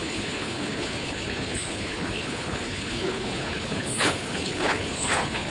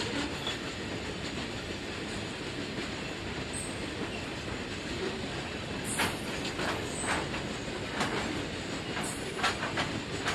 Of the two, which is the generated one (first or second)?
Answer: first